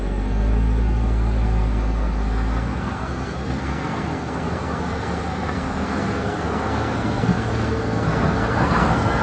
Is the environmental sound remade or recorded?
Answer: remade